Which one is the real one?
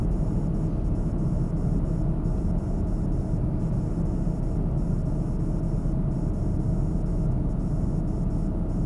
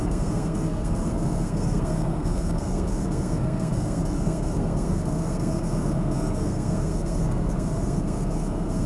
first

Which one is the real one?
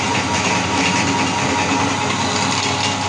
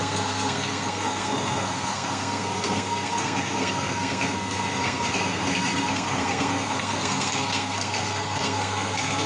first